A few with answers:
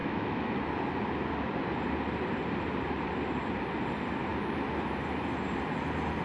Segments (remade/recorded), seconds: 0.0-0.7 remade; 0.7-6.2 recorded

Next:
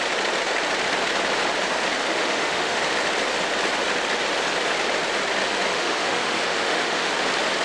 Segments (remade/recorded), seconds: 0.0-2.1 recorded; 2.1-2.8 remade; 2.8-5.7 recorded; 5.7-7.1 remade; 7.1-7.6 recorded

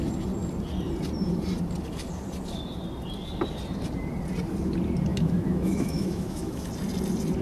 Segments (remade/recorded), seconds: 0.0-5.1 recorded; 5.1-6.7 remade; 6.7-7.4 recorded

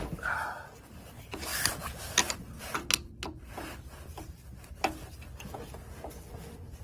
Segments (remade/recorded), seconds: 0.0-6.8 recorded